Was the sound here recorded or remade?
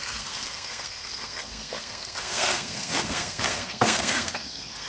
remade